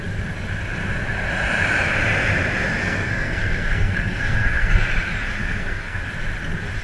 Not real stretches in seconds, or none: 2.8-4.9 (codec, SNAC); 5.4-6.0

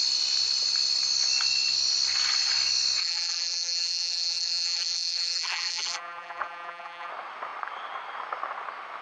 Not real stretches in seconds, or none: 3.0-7.1 (vocoder, BigVGAN v2)

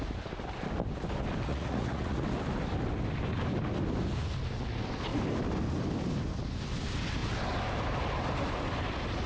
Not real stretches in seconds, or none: 1.5-2.2 (vocoder, Vocos)

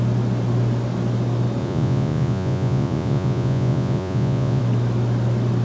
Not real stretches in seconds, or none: 1.6-4.6 (vocoder, Vocos)

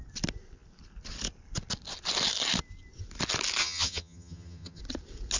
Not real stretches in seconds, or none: 3.6-4.8 (vocoder, HiFi-GAN)

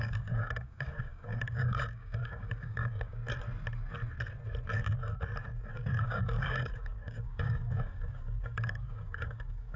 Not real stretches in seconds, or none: 0.0-3.2 (codec, DAC); 5.7-9.8